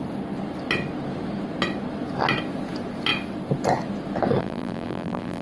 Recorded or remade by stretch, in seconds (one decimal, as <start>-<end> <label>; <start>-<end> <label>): 0.0-4.4 recorded; 4.4-5.4 remade

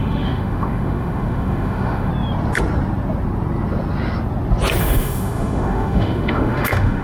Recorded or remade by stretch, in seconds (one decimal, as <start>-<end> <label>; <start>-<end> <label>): 0.0-2.1 remade; 2.1-4.8 recorded; 4.8-7.0 remade

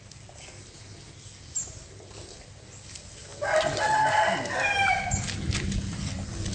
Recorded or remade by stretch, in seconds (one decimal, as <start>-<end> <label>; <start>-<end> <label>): 0.0-6.5 recorded

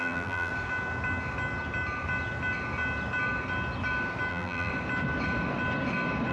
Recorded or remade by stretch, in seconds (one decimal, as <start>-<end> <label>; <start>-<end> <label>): 0.0-0.5 remade; 0.5-4.3 recorded; 4.3-4.7 remade; 4.7-6.3 recorded

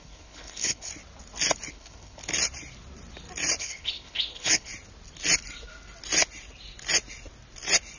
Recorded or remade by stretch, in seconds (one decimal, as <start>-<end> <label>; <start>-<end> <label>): 0.0-0.9 remade; 0.9-1.7 recorded; 1.7-2.2 remade; 2.2-3.6 recorded; 3.6-4.7 remade; 4.7-8.0 recorded

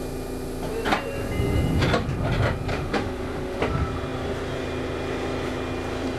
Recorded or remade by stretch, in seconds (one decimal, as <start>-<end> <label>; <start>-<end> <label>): 0.0-2.7 recorded; 2.7-3.6 remade; 3.6-6.2 recorded